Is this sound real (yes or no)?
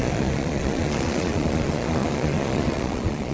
no